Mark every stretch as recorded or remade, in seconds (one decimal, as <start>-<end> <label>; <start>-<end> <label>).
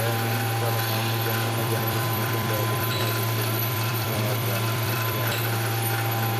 0.0-1.6 recorded; 1.6-5.4 remade; 5.4-6.4 recorded